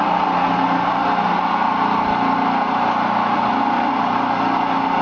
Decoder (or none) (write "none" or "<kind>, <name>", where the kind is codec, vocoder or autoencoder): none